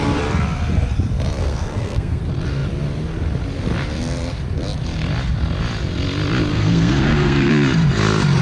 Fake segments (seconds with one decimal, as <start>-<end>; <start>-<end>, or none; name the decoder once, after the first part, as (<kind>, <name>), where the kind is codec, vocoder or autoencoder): 1.4-2.2 (codec, SNAC); 6.5-7.5